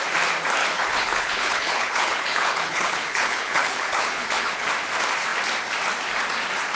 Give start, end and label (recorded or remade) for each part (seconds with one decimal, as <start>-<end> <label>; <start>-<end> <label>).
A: 0.0-0.6 recorded; 0.6-4.7 remade; 4.7-6.8 recorded